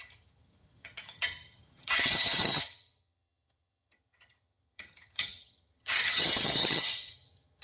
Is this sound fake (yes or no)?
yes